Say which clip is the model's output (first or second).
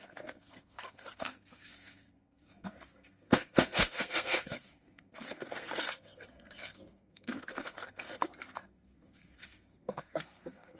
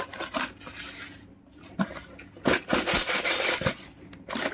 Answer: first